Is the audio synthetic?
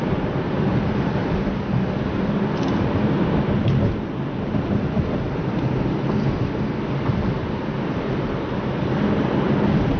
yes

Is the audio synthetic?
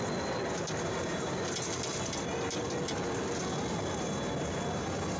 no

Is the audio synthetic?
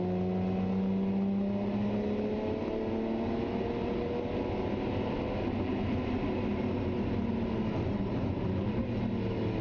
no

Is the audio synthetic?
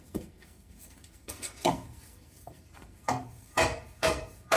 yes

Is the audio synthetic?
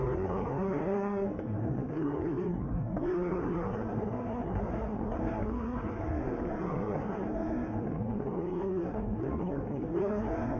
yes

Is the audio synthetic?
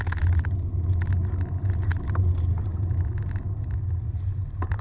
no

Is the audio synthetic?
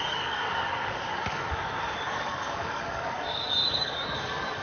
yes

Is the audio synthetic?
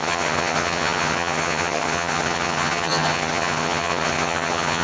yes